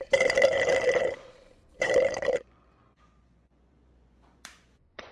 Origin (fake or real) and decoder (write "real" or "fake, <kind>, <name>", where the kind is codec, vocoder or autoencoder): fake, vocoder, Vocos